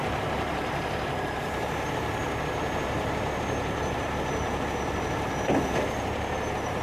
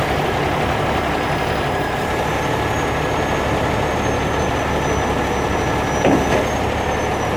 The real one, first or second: second